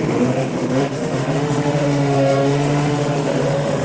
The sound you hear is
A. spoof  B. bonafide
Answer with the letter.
A